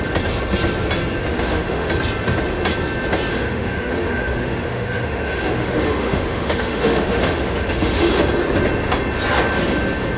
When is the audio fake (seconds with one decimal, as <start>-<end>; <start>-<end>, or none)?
1.2-1.9; 3.3-8.2